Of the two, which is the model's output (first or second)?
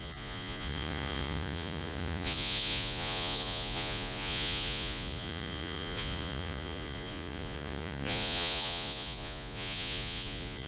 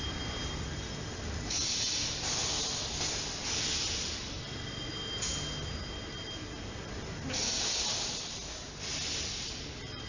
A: first